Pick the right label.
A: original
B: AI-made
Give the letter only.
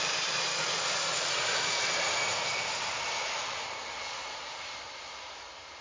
B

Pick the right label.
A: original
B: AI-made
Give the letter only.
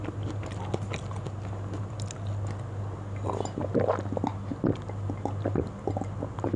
A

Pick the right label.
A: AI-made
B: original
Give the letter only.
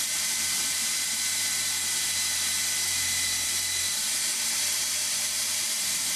A